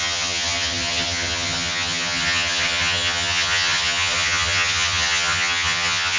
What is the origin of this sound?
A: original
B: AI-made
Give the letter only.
B